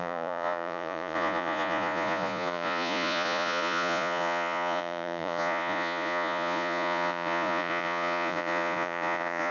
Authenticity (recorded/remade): remade